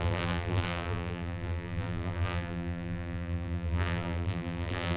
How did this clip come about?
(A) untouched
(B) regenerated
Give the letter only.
B